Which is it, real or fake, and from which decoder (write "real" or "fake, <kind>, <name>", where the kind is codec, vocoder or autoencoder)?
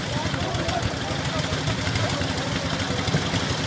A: real